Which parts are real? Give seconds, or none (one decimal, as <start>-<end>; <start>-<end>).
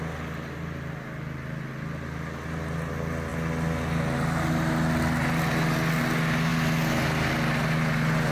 0.0-8.3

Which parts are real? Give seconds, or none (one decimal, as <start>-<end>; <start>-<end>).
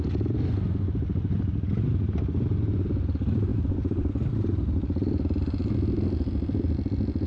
0.0-7.3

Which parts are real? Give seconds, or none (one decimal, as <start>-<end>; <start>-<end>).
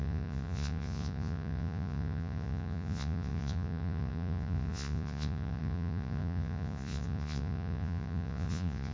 none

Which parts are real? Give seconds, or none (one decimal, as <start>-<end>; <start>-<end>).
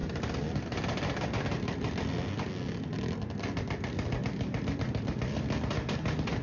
0.0-6.4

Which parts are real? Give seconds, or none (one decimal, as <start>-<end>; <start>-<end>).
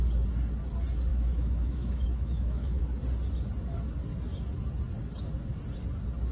0.0-1.1; 2.8-6.3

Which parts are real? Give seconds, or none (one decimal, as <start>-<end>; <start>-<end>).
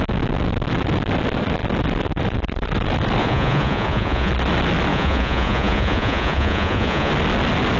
0.0-3.2; 4.3-4.9; 7.1-7.8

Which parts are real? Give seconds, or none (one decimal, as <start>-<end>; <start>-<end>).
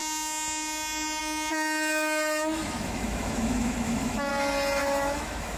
0.0-1.2; 4.3-4.8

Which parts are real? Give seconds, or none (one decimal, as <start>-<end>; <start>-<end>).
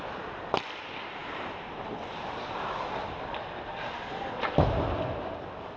0.0-5.8